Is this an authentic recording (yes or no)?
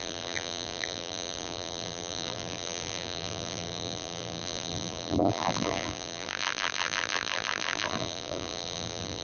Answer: no